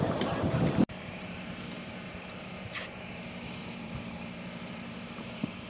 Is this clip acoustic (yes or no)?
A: no